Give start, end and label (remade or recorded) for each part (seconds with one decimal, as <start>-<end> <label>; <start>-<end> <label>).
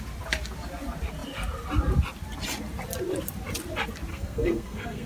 0.0-4.1 recorded; 4.1-5.1 remade